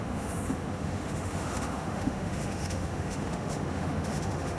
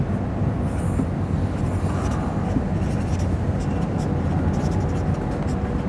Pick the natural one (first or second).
second